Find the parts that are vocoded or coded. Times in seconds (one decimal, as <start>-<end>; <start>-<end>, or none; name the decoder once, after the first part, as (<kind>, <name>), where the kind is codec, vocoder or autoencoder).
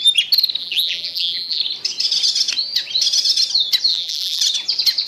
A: 0.6-1.6 (vocoder, BigVGAN v2); 3.9-4.4